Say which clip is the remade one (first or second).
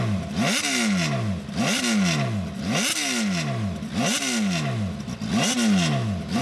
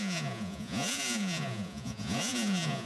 second